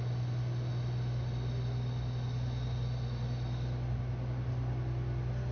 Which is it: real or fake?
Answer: real